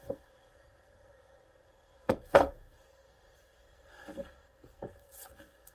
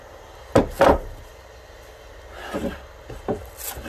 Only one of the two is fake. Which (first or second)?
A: first